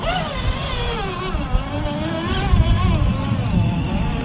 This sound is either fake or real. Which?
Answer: real